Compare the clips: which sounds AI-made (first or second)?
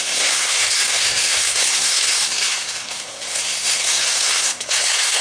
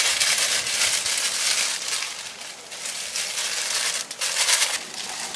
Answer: first